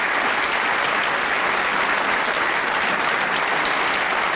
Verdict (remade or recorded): recorded